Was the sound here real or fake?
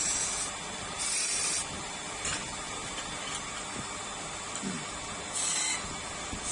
real